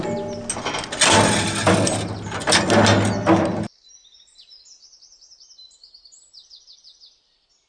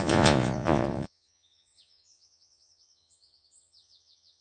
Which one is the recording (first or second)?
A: first